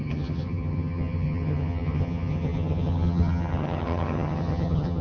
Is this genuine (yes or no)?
no